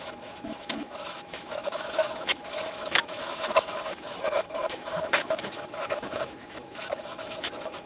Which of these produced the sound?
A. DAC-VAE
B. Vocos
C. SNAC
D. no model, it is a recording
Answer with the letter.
A